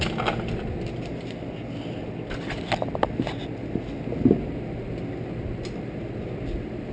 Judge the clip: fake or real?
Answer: real